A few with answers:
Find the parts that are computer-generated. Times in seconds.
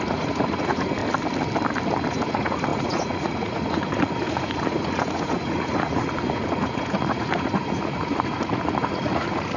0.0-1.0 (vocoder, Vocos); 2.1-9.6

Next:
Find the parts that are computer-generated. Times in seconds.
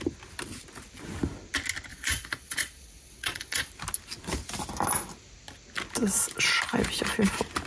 1.9-3.7 (vocoder, Vocos)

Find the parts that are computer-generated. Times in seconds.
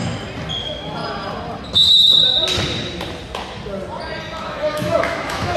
0.6-1.0 (autoencoder, DAC-VAE); 4.4-5.6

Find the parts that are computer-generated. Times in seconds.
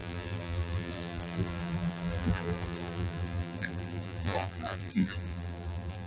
0.0-6.1 (vocoder, BigVGAN v2)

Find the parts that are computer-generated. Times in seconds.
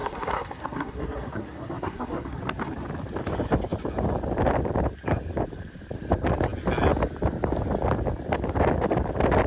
0.0-2.4 (codec, SNAC)